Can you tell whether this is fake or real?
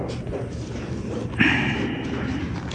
real